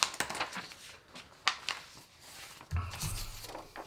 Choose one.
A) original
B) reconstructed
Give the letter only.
A